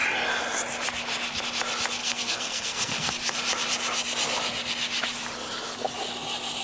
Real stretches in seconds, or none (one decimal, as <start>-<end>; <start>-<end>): 0.0-2.0; 3.1-6.6